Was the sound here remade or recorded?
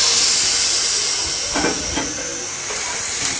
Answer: recorded